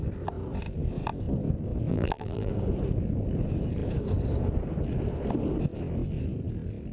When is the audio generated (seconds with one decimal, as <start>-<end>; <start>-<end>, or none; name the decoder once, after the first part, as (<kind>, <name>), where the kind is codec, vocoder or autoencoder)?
1.9-2.5 (vocoder, BigVGAN v2)

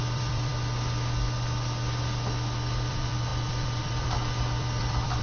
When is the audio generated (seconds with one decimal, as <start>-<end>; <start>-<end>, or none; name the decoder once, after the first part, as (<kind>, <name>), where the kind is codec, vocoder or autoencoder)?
0.0-0.5 (vocoder, BigVGAN v2); 2.9-5.2